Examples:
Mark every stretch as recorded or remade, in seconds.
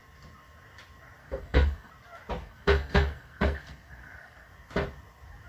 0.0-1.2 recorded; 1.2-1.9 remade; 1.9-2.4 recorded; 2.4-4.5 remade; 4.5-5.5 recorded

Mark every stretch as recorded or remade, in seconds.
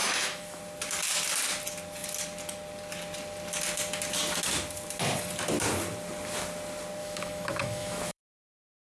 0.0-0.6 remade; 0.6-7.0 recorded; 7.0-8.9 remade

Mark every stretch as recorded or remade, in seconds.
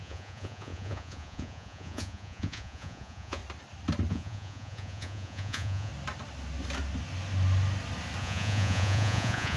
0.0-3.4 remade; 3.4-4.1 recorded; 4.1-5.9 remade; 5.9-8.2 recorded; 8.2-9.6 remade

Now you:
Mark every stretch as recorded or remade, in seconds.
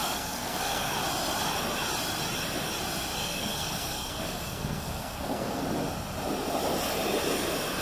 0.0-0.9 remade; 0.9-3.2 recorded; 3.2-5.6 remade; 5.6-7.8 recorded